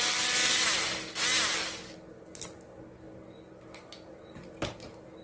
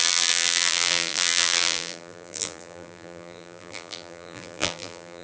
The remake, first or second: second